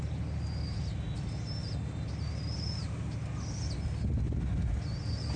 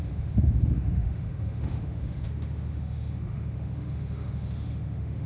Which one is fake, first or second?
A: second